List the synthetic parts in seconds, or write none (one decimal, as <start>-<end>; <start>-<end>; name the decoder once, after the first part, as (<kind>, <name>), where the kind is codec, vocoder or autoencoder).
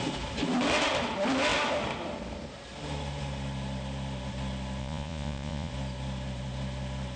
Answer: 4.8-5.7 (vocoder, Vocos)